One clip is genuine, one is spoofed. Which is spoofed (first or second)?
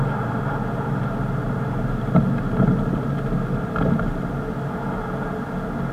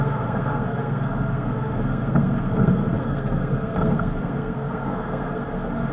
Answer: second